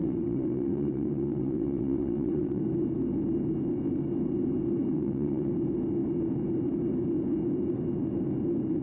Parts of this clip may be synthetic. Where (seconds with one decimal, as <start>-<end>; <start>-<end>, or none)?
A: 0.0-2.6; 4.9-5.5